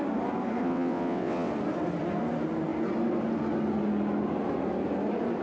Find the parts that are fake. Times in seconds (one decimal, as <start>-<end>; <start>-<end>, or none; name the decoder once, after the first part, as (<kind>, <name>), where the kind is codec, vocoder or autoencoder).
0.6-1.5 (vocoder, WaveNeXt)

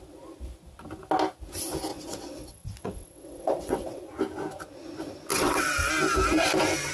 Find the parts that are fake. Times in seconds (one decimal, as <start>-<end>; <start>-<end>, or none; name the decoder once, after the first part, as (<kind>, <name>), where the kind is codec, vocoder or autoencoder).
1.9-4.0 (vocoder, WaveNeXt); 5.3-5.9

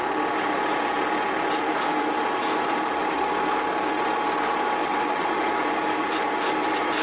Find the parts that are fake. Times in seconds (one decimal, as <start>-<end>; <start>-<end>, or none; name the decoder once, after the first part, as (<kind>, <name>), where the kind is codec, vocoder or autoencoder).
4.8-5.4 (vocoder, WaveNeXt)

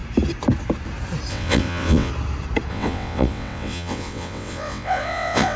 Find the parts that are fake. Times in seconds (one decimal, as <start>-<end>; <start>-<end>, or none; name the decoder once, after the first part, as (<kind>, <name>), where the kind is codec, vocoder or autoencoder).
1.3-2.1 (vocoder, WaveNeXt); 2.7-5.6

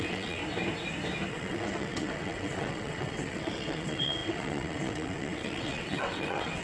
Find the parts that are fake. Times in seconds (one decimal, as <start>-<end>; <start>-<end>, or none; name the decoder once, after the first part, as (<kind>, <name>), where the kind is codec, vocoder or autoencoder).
0.0-0.4 (vocoder, WaveNeXt); 1.3-6.6

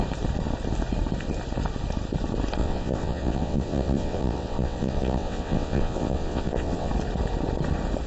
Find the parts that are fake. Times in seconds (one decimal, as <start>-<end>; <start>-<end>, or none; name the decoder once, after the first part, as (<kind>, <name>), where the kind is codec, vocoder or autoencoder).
2.6-6.9 (vocoder, WaveNeXt)